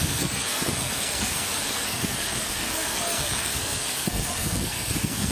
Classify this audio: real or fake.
fake